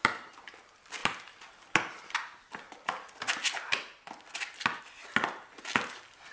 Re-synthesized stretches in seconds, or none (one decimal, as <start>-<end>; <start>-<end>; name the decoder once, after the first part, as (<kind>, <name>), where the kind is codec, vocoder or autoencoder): none